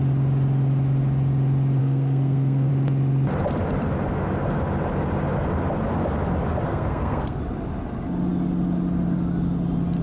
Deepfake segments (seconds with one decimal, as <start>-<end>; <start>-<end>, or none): 1.8-2.7; 6.7-7.4